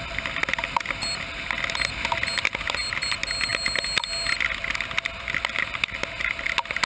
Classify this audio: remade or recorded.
recorded